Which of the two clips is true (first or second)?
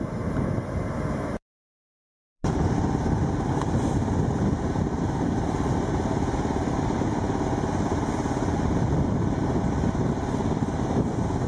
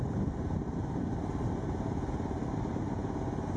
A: second